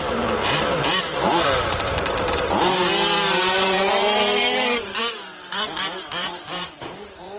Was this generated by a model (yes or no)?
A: yes